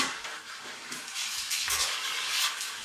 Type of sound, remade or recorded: remade